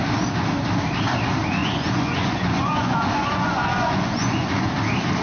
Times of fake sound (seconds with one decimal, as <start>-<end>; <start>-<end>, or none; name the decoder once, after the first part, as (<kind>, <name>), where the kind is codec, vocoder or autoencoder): 1.6-4.7 (vocoder, Vocos)